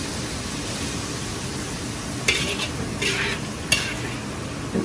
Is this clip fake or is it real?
real